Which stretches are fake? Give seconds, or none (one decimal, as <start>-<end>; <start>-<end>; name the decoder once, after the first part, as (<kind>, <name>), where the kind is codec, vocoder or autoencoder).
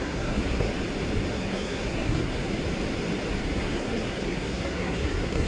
0.0-0.7 (codec, SNAC); 1.3-2.6; 3.4-5.5